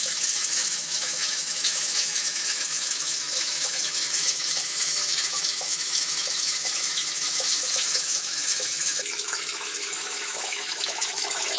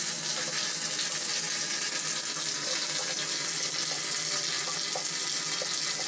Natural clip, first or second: second